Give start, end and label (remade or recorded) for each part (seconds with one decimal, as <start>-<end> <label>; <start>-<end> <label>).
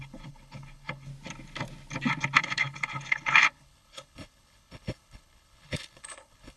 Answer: 0.0-1.1 remade; 1.1-2.4 recorded; 2.4-6.6 remade